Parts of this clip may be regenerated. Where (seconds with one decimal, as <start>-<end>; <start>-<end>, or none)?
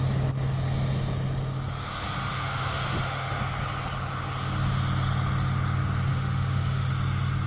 2.3-3.4; 6.1-6.9